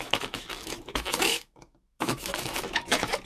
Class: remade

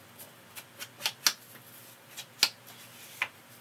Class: recorded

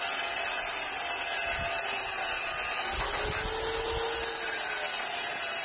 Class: recorded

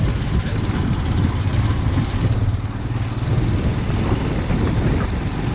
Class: recorded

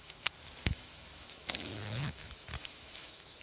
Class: remade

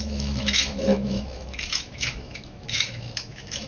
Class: remade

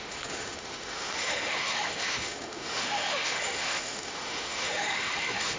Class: remade